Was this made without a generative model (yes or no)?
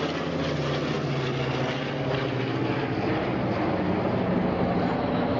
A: yes